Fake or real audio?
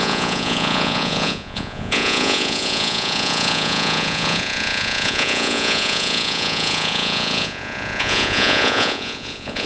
fake